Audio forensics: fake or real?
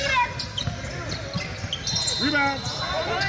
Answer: real